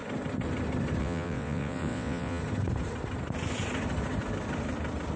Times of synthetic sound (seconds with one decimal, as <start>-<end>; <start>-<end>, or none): 1.0-2.4